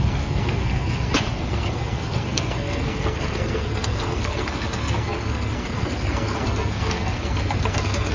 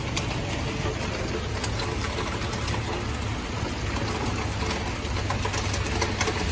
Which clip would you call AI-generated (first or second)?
first